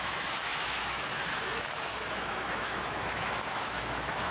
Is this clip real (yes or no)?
no